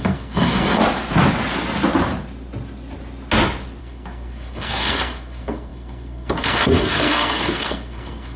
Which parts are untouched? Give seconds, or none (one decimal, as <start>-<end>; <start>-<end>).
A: 0.8-3.8